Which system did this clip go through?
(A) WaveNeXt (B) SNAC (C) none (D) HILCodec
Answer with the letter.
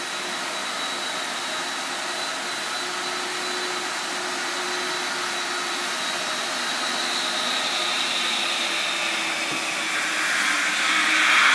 C